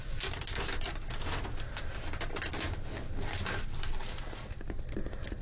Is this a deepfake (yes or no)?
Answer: no